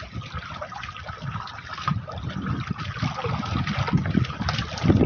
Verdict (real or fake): real